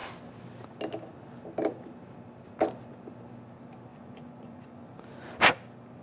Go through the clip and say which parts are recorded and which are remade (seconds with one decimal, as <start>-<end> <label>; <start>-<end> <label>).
0.0-3.9 recorded; 3.9-4.7 remade; 4.7-6.0 recorded